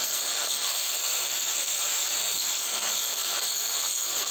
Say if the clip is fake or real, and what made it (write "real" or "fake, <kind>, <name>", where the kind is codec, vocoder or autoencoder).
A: fake, codec, SNAC